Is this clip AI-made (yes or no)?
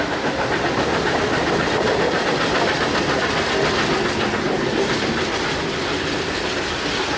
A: no